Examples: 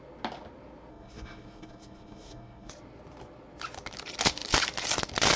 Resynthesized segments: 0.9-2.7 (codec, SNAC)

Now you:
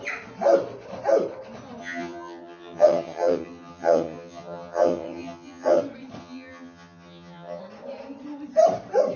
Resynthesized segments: 1.8-5.8 (vocoder, HiFi-GAN); 6.2-7.6

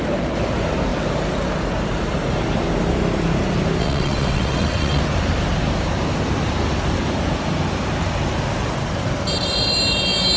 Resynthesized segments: 3.8-5.0 (vocoder, WaveNeXt)

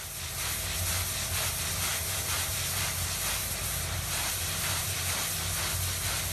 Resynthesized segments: 1.9-2.5 (vocoder, BigVGAN v2); 3.4-5.0